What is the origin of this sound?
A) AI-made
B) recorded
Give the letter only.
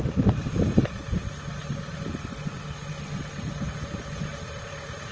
B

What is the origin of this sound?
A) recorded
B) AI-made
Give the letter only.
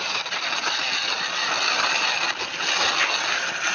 A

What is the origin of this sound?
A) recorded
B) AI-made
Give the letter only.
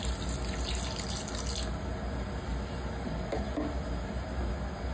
A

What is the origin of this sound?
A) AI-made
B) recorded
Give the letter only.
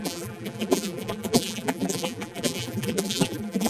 A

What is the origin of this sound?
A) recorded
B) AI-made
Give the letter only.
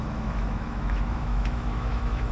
B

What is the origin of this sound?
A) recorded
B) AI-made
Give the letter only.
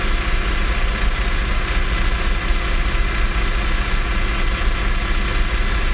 A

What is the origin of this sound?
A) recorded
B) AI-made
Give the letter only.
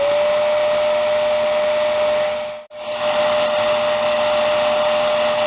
A